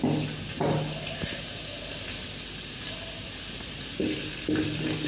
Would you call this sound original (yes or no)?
yes